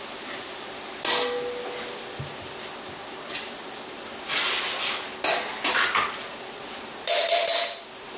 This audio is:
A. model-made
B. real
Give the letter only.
B